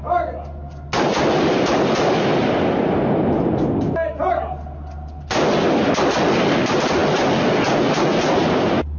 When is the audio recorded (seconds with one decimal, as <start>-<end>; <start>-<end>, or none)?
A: 0.0-9.0